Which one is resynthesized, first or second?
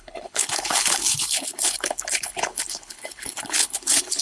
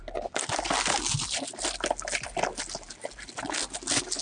first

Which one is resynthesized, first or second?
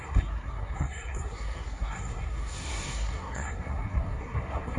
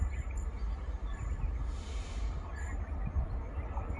first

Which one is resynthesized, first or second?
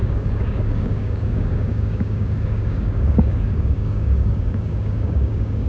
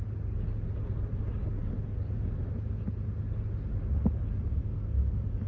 first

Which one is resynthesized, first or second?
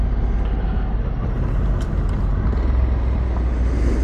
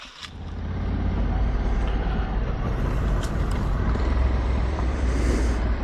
second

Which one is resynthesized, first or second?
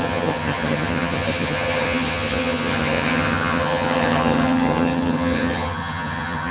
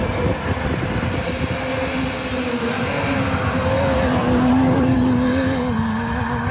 first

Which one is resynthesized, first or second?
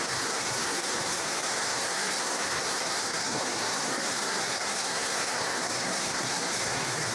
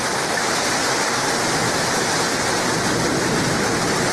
first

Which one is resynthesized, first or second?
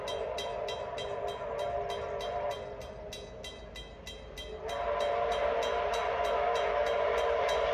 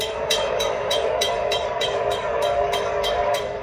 second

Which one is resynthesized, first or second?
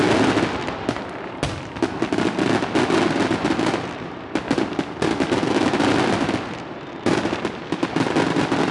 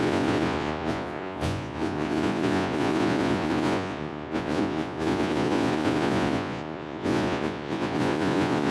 second